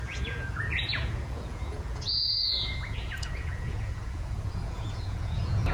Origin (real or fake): fake